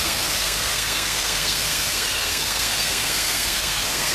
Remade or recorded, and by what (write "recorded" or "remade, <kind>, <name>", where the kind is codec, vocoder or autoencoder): remade, codec, SNAC